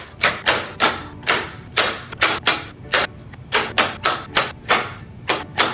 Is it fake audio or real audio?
real